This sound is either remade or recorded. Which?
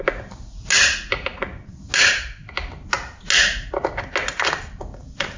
recorded